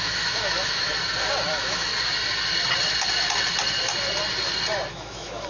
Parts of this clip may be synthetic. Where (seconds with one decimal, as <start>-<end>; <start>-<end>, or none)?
0.0-0.9; 1.5-1.9; 4.9-5.5